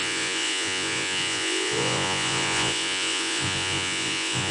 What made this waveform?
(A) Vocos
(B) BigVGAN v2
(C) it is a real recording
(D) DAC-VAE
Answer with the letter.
A